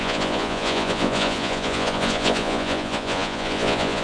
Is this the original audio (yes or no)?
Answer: no